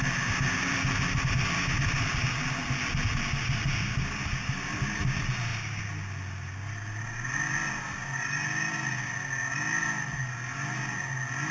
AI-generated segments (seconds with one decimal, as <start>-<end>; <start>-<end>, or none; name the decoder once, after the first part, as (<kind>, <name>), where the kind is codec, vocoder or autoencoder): none